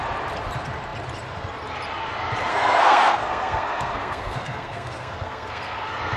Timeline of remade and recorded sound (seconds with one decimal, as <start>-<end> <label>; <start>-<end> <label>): 0.0-2.5 recorded; 2.5-6.2 remade